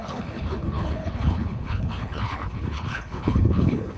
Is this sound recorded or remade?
remade